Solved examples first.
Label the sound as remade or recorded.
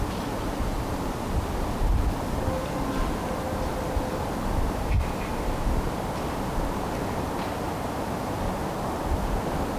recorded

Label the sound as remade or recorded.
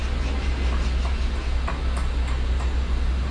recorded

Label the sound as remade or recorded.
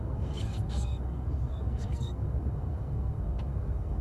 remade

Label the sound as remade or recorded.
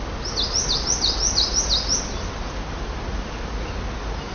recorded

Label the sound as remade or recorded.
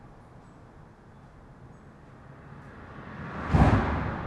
recorded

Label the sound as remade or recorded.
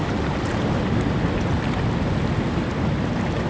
recorded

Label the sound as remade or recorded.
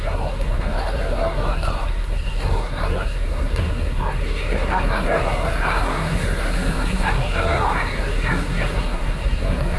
remade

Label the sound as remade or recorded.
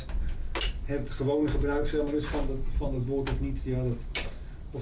recorded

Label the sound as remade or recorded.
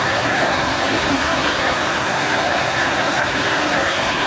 remade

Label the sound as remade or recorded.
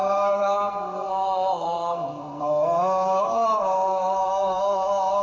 remade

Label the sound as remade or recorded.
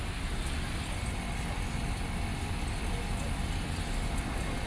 recorded